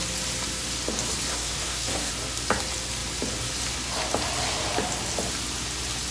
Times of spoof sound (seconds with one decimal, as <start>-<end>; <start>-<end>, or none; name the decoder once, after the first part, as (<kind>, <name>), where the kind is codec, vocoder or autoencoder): 1.3-2.1 (codec, SNAC)